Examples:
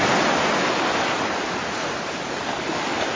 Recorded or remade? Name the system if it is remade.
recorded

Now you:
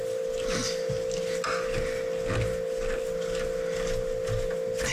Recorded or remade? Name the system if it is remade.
recorded